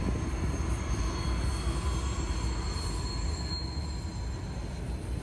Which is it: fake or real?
real